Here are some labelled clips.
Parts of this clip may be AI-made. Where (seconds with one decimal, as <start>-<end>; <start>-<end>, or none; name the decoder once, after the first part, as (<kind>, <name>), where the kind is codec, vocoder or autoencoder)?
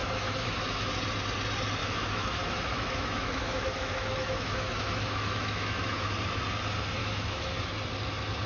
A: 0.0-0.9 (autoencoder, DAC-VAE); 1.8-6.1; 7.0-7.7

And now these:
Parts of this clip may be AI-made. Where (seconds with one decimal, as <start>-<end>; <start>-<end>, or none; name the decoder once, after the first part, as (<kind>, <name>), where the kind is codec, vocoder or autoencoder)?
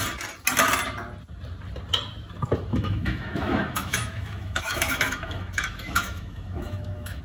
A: 2.7-7.2 (autoencoder, DAC-VAE)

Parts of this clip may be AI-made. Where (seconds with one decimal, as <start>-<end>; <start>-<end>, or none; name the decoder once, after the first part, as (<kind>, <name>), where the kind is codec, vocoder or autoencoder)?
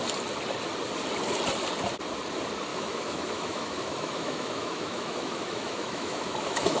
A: 2.7-6.8 (autoencoder, DAC-VAE)